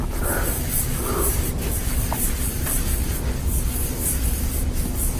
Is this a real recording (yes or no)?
no